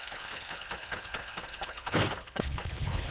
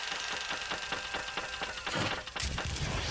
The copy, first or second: first